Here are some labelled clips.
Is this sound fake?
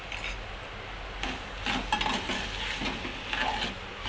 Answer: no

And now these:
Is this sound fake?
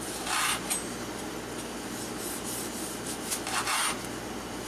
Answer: no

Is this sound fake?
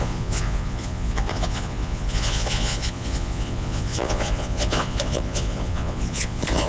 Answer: yes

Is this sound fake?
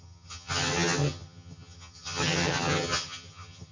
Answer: yes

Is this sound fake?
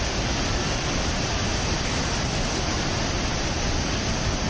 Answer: no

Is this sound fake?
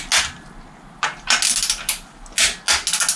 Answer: no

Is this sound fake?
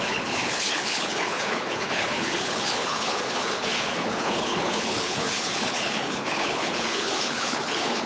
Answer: yes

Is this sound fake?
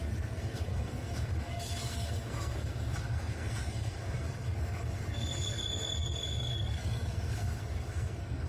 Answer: yes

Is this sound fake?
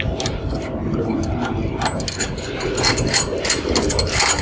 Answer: no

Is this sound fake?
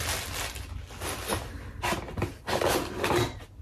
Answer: no